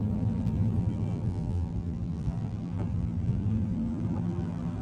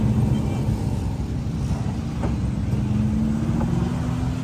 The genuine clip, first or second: second